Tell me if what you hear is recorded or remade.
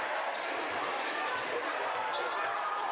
recorded